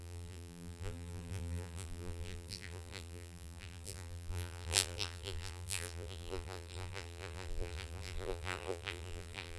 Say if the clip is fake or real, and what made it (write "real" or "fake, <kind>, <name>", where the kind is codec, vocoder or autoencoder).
fake, vocoder, BigVGAN v2